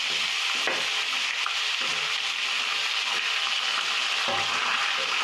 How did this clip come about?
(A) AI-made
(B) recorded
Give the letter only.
B